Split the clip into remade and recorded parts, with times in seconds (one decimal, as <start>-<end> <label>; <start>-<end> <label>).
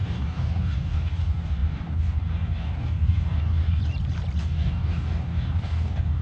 0.0-3.8 remade; 3.8-4.4 recorded; 4.4-6.2 remade